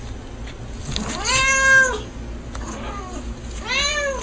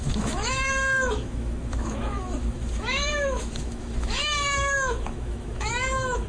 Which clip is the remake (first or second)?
second